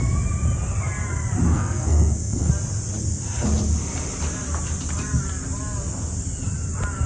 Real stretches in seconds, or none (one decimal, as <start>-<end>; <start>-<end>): 0.0-1.5; 2.5-7.1